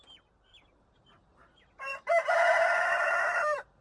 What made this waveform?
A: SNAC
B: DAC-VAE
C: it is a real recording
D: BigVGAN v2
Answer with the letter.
D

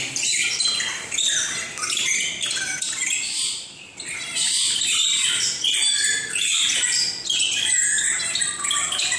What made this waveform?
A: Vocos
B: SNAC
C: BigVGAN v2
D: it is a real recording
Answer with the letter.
D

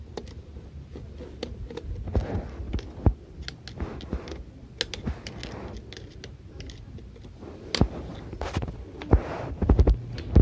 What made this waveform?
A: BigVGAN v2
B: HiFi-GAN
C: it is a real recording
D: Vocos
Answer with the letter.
C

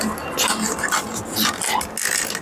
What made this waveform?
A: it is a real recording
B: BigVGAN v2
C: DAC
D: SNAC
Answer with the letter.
A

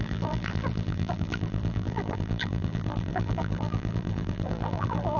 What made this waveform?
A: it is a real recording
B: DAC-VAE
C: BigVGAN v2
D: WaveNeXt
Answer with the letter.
C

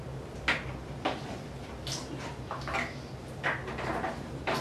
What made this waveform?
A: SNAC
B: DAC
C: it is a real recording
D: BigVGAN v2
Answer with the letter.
C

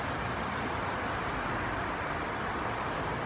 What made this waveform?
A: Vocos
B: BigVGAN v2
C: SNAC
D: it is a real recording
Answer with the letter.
B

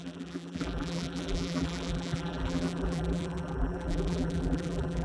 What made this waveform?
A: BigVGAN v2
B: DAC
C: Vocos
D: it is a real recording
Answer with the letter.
A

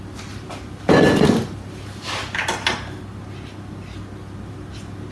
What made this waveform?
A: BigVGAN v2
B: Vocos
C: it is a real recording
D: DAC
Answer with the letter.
C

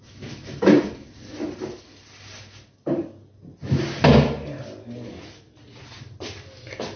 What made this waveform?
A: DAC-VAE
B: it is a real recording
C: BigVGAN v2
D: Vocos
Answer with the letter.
B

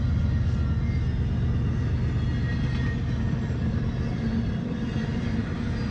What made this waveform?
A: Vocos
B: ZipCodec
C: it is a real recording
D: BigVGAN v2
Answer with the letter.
C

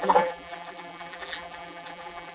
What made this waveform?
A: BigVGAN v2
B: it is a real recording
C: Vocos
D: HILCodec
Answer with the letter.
A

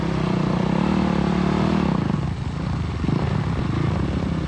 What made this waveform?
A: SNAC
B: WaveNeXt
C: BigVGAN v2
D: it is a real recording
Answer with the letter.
D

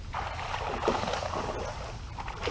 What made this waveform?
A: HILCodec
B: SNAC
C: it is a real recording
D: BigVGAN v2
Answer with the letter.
C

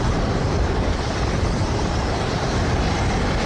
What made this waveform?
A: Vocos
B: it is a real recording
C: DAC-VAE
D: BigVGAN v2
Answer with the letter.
B